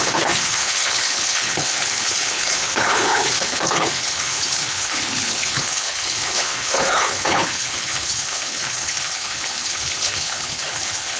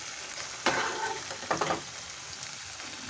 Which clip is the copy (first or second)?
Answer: first